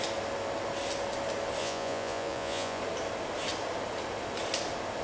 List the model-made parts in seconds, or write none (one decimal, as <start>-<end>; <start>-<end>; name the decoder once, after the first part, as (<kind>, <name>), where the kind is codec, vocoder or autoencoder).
1.6-2.8 (vocoder, Vocos)